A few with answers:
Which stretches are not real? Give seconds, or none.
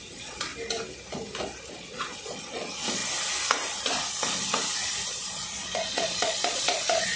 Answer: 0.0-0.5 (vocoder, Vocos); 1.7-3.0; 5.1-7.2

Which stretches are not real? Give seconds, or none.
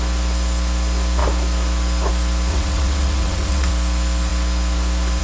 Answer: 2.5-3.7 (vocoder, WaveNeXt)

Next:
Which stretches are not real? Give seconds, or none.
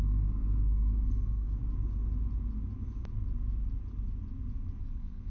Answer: 0.0-1.6 (codec, SNAC); 4.8-5.3